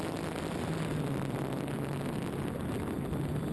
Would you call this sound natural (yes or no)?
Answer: yes